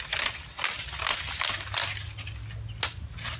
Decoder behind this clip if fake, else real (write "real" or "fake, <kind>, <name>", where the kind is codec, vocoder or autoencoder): real